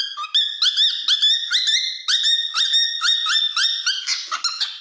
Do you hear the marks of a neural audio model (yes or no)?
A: no